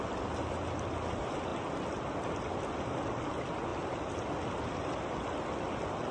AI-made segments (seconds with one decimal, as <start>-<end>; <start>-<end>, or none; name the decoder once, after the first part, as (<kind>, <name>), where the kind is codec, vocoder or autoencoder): none